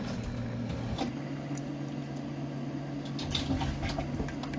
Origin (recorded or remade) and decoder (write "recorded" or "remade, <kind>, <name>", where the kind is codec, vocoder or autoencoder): recorded